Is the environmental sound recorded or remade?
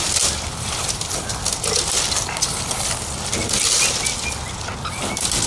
recorded